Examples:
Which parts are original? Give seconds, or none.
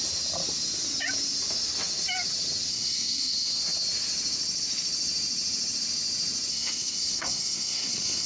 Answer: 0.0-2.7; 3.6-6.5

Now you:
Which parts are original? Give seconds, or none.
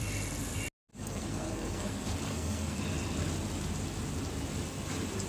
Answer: 0.0-0.9; 2.8-5.3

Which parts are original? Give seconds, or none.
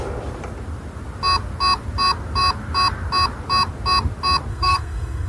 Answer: 0.0-4.5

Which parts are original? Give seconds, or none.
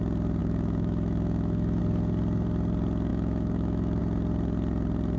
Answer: 0.0-0.4; 1.8-3.1; 4.0-5.2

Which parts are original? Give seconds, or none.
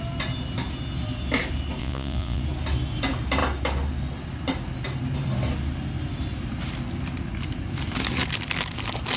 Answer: 0.0-1.8; 2.4-9.2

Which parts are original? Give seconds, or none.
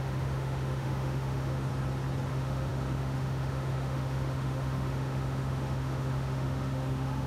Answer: 1.7-2.3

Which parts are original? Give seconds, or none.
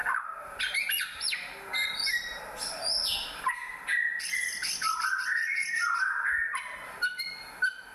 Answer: 0.0-7.9